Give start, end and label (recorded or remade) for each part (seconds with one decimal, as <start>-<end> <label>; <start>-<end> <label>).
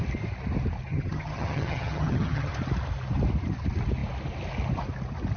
0.0-0.9 recorded; 0.9-2.5 remade; 2.5-5.4 recorded